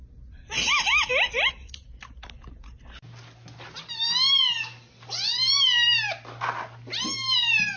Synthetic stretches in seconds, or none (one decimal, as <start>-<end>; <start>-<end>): none